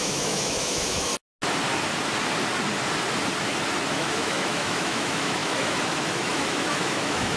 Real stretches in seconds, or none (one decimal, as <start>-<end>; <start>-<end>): 1.1-3.9